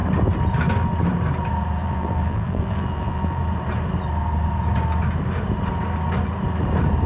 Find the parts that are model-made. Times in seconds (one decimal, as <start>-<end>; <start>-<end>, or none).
1.8-3.4